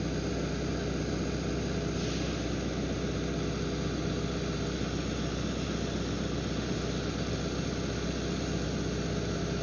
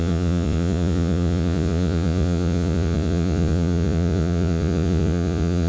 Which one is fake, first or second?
second